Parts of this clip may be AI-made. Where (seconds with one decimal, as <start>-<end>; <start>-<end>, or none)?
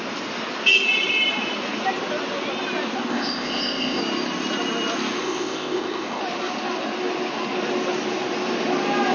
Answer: 3.1-4.0; 5.2-6.2